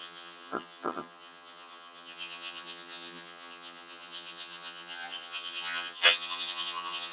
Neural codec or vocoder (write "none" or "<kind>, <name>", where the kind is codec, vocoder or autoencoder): vocoder, HiFi-GAN